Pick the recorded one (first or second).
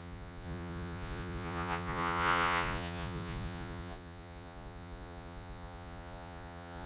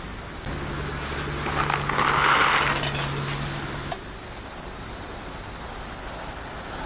second